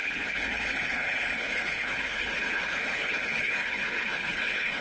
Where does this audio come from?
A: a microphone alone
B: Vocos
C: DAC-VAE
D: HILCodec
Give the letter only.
D